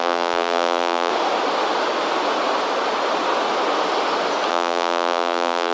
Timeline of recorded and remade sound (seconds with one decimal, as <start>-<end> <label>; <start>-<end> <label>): 0.0-1.1 remade; 1.1-4.5 recorded; 4.5-5.7 remade